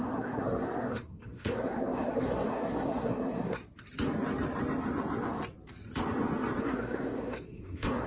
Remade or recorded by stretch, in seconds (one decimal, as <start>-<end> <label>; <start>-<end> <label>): 0.0-3.6 remade; 3.6-6.6 recorded; 6.6-8.1 remade